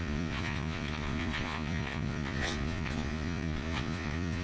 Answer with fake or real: fake